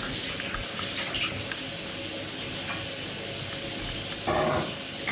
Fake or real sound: real